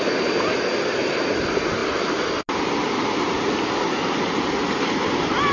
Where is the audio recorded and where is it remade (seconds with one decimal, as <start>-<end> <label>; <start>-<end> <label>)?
0.0-5.5 recorded